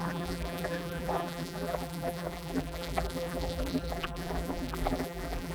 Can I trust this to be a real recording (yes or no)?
no